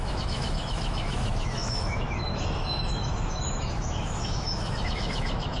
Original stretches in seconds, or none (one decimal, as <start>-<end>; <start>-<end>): none